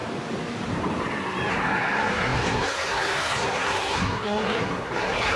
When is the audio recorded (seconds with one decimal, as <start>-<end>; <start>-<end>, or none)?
0.0-1.5